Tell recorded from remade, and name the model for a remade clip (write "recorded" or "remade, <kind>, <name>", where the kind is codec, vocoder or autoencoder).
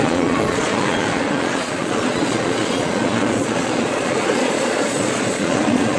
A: remade, vocoder, Vocos